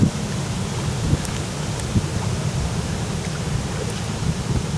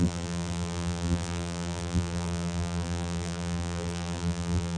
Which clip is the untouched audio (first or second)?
first